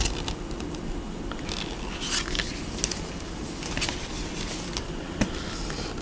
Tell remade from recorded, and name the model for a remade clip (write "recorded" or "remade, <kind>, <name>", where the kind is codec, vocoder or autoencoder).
recorded